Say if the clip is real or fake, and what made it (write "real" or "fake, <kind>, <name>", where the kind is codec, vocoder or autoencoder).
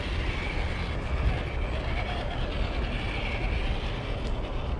real